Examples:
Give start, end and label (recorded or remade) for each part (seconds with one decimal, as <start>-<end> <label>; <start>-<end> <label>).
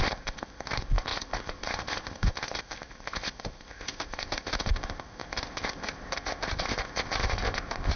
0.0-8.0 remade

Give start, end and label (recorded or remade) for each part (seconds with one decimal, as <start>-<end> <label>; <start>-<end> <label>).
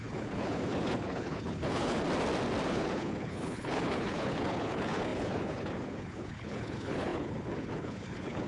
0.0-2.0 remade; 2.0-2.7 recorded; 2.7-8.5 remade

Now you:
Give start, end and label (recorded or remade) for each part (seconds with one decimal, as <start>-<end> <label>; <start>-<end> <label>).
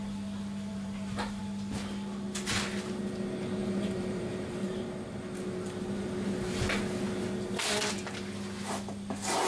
0.0-0.7 recorded; 0.7-1.4 remade; 1.4-3.6 recorded; 3.6-4.8 remade; 4.8-9.5 recorded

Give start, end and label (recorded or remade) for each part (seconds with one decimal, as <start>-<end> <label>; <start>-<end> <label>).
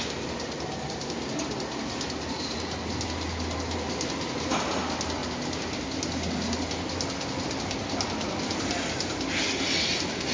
0.0-10.3 recorded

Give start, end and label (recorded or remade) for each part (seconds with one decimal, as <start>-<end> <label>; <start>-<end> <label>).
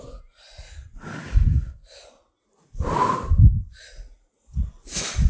0.0-5.3 recorded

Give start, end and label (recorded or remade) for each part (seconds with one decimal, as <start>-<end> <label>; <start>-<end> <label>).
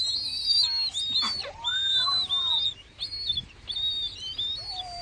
0.0-5.0 recorded